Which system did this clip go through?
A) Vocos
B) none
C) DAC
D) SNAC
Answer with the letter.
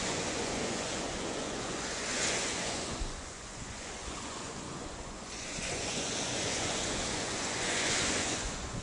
A